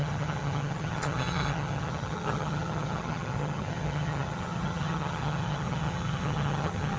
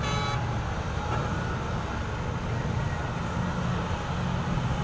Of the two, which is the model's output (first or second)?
first